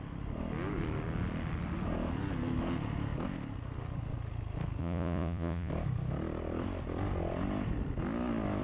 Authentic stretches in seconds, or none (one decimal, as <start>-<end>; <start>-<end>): 0.0-4.8; 5.7-8.6